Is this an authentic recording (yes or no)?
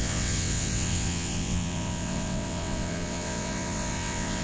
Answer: no